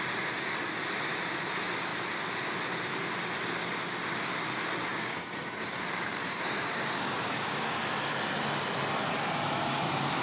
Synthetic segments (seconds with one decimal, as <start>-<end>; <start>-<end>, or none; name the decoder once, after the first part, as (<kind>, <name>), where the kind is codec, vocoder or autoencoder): 4.9-5.8 (codec, DAC); 6.2-7.8